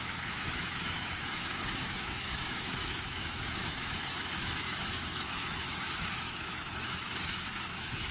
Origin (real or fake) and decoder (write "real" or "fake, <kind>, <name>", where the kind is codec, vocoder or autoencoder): fake, autoencoder, DAC-VAE